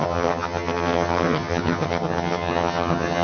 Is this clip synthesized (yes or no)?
yes